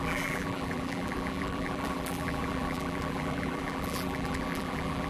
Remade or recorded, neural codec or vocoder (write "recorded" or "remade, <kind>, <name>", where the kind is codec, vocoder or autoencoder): remade, vocoder, BigVGAN v2